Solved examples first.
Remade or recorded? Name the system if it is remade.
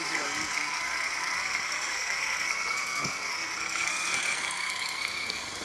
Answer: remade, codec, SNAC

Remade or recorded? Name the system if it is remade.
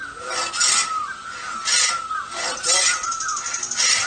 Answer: recorded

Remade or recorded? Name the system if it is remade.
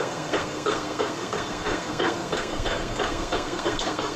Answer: remade, codec, SNAC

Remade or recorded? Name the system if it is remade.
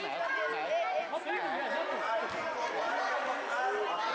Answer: recorded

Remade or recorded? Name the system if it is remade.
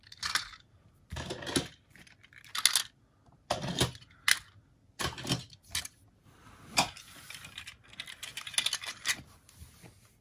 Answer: recorded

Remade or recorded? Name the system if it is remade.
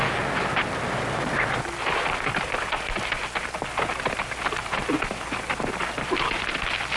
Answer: recorded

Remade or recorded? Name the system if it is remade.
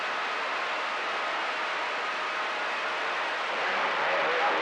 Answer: recorded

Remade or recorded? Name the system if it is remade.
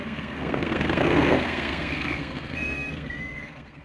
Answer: remade, codec, SNAC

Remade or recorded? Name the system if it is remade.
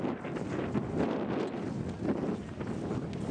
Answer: recorded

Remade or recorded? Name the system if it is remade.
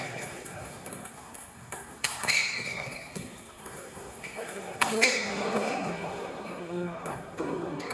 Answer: remade, codec, SNAC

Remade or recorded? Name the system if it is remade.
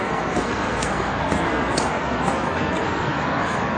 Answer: remade, codec, SNAC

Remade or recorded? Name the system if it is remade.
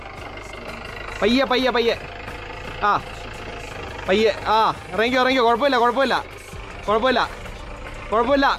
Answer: recorded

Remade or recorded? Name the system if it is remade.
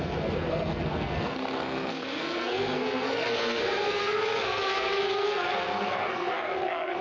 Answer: remade, codec, SNAC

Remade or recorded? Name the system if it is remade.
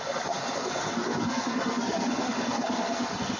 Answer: remade, codec, SNAC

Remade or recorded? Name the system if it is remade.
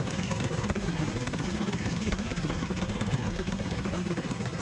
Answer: remade, codec, SNAC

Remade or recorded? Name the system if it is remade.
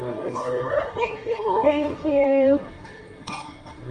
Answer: remade, codec, SNAC